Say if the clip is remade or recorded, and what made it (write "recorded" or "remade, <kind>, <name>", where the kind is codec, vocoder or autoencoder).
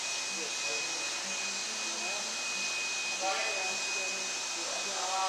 recorded